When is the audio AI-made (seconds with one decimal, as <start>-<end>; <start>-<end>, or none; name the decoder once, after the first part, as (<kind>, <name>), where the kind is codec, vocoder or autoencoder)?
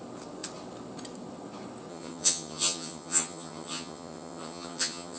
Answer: 1.9-5.2 (vocoder, HiFi-GAN)